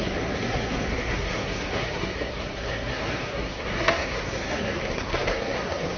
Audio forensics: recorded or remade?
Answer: remade